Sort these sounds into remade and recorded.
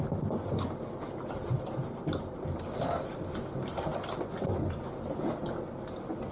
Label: recorded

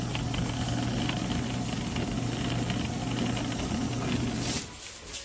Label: recorded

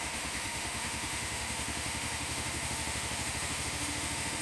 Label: remade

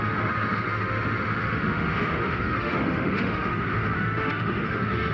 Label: remade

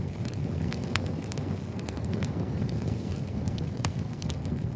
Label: remade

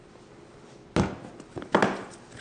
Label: recorded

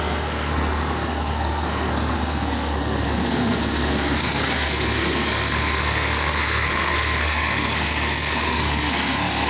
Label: remade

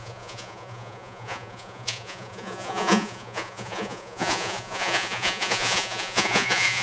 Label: remade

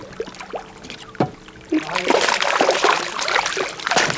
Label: recorded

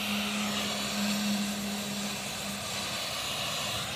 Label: recorded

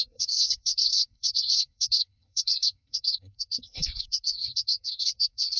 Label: remade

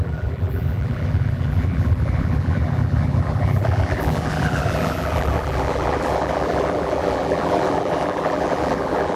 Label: remade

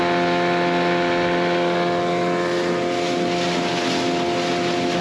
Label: recorded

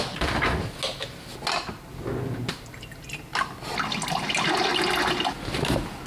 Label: recorded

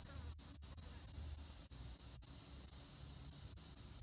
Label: recorded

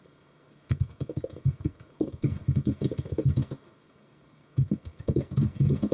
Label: remade